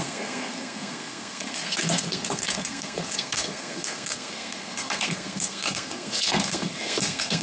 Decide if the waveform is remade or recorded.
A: remade